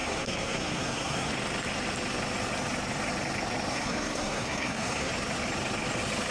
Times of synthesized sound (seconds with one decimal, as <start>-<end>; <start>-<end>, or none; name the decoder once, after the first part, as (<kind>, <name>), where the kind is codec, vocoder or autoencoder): 0.0-1.3 (codec, SNAC); 3.7-5.1